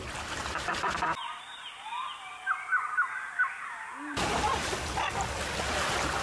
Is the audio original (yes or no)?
yes